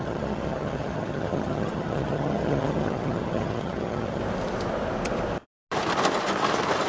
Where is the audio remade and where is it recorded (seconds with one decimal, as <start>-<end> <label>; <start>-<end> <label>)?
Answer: 0.0-4.2 remade; 4.2-6.9 recorded